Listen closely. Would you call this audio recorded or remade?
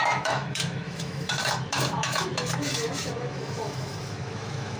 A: remade